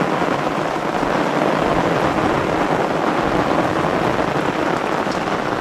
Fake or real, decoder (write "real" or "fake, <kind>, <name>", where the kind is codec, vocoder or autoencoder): real